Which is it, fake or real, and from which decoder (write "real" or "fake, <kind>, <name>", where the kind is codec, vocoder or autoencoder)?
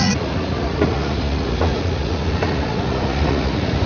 fake, vocoder, Vocos